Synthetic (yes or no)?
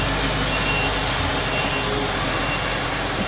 no